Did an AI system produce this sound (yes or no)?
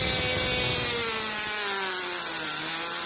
no